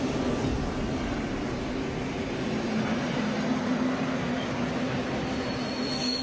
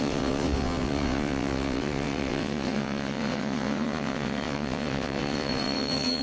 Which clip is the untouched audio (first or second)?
first